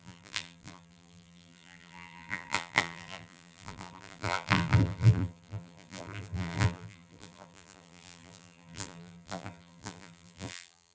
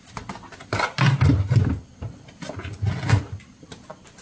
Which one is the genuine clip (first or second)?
second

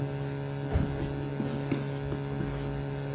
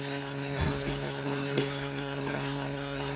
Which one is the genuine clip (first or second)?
first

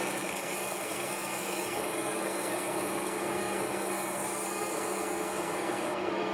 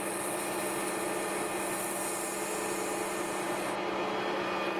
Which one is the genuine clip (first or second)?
second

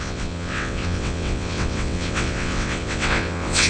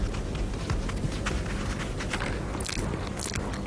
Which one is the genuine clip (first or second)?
second